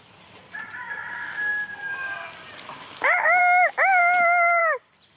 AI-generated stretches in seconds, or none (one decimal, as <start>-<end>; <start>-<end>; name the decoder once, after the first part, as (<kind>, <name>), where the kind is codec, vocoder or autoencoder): none